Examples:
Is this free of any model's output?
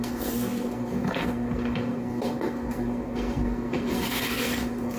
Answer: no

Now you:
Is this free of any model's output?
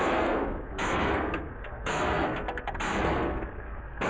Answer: no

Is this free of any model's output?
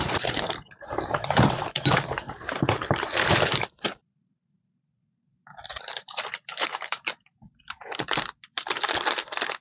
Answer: no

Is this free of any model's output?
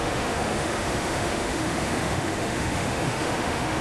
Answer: no